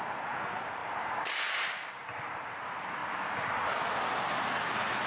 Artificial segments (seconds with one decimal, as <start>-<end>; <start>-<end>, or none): 0.0-3.0